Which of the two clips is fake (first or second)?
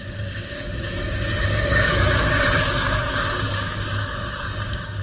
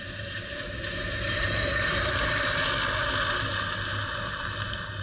first